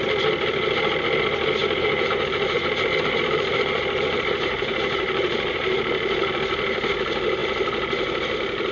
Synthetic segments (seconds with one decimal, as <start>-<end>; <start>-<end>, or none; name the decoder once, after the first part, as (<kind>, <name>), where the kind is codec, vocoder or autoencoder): 1.6-5.8 (vocoder, BigVGAN v2)